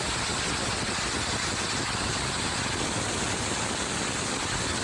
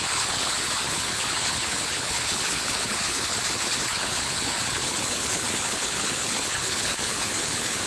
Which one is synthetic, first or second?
second